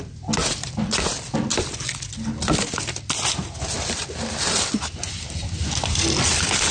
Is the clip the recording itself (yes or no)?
yes